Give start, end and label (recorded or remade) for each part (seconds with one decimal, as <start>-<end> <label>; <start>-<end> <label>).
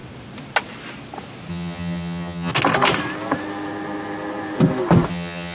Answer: 0.0-1.5 recorded; 1.5-2.5 remade; 2.5-5.1 recorded; 5.1-5.5 remade